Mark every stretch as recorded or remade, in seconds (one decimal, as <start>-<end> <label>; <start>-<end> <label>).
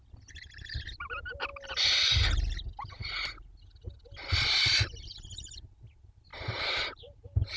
0.0-7.6 recorded